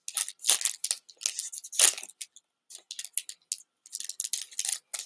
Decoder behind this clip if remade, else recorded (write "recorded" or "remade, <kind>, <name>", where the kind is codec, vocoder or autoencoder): recorded